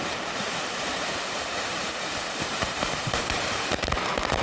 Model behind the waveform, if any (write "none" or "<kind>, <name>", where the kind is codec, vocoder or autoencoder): vocoder, BigVGAN v2